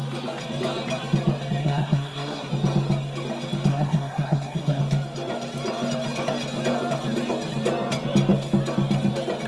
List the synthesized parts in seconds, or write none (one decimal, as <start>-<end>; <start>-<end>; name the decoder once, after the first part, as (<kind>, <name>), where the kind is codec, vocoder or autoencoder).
1.6-2.5 (codec, SNAC); 3.7-4.8